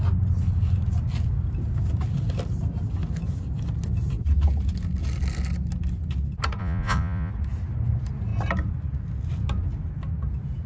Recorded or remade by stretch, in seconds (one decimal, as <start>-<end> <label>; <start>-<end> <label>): 0.0-6.6 recorded; 6.6-7.3 remade; 7.3-10.7 recorded